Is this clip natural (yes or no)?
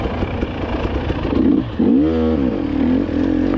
yes